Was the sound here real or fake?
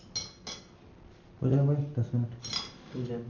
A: real